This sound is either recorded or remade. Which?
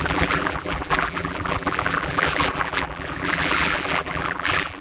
remade